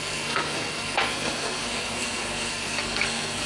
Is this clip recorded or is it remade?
remade